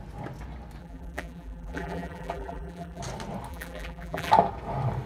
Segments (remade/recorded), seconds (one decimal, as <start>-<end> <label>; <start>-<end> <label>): 0.0-0.8 recorded; 0.8-3.0 remade; 3.0-3.5 recorded; 3.5-4.3 remade; 4.3-5.1 recorded